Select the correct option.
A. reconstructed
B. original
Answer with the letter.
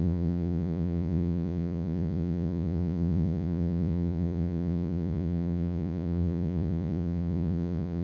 A